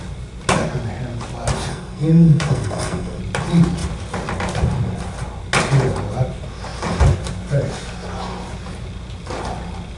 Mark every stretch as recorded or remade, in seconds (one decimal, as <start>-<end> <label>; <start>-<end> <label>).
0.0-1.7 recorded; 1.7-3.2 remade; 3.2-10.0 recorded